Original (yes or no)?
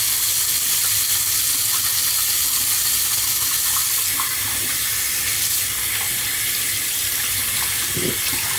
yes